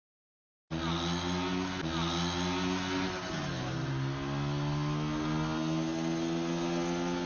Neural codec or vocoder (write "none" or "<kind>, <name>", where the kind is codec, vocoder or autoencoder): none